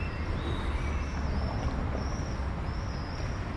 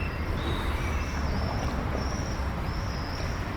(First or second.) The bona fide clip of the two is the first